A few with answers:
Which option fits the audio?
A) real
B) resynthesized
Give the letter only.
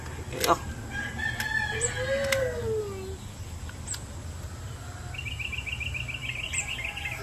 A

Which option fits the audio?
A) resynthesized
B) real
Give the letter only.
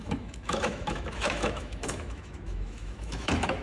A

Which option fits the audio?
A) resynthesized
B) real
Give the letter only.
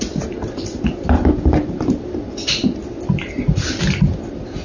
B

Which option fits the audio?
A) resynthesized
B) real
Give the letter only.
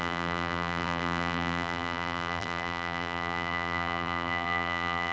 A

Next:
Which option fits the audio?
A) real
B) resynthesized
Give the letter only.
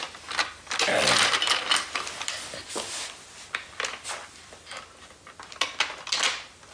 A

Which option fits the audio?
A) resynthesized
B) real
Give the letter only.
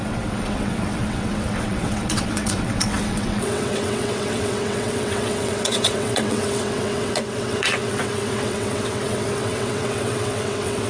A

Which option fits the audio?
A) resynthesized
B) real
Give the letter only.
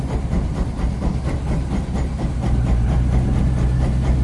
B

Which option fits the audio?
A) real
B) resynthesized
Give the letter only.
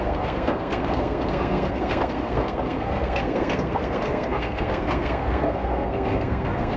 B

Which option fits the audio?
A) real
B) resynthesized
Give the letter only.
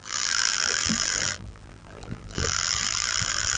B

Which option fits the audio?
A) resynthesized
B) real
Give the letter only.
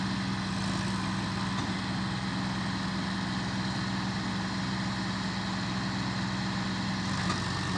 B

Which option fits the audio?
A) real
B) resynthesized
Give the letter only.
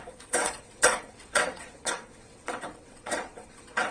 B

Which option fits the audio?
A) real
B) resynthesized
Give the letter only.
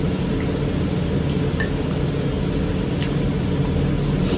A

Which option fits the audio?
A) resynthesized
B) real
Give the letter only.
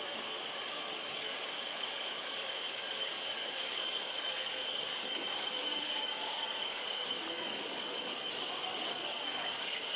A